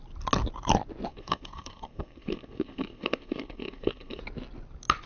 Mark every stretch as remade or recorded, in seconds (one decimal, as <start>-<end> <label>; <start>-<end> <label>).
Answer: 0.0-1.1 recorded; 1.1-4.2 remade; 4.2-5.1 recorded

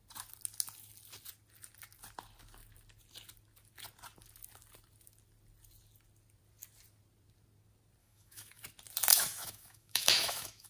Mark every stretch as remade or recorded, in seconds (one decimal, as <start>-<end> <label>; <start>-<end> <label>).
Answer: 0.0-8.0 recorded; 8.0-8.6 remade; 8.6-9.1 recorded; 9.1-10.7 remade

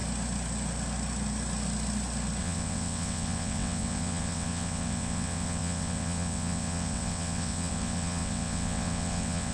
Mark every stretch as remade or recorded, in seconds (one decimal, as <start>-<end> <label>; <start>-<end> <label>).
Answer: 0.0-2.4 recorded; 2.4-9.5 remade

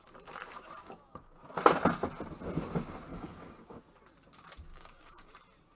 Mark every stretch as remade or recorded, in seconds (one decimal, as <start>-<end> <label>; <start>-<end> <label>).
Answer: 0.0-0.8 recorded; 0.8-1.3 remade; 1.3-3.1 recorded; 3.1-3.8 remade; 3.8-4.7 recorded; 4.7-5.3 remade; 5.3-5.8 recorded

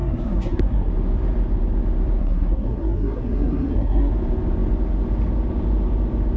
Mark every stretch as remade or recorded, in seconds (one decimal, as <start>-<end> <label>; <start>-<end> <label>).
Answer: 0.0-0.9 remade; 0.9-2.2 recorded; 2.2-4.1 remade; 4.1-6.4 recorded

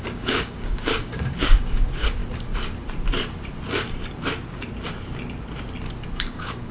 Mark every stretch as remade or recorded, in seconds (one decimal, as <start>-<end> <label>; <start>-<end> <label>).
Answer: 0.0-2.2 remade; 2.2-6.2 recorded; 6.2-6.7 remade